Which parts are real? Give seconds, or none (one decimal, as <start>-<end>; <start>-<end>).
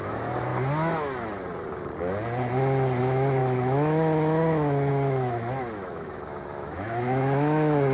0.5-3.0